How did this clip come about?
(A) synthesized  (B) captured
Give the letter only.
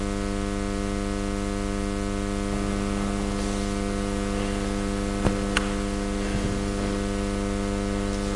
B